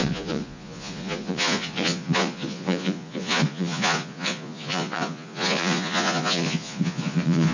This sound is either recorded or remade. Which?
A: remade